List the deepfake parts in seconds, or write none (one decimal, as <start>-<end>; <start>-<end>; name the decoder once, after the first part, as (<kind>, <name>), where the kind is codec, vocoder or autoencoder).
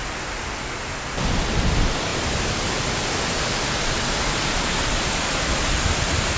none